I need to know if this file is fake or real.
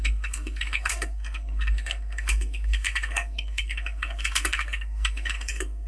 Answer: fake